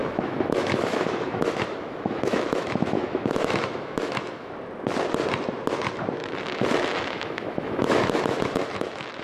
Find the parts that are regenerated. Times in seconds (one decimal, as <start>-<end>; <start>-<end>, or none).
0.0-4.5; 6.2-9.2